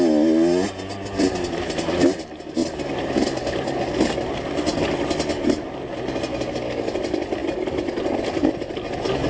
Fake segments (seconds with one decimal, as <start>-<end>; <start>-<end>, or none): none